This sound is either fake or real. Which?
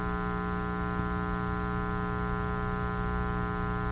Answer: real